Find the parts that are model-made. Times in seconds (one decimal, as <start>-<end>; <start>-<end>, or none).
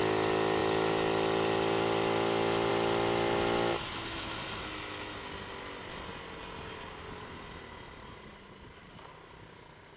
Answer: none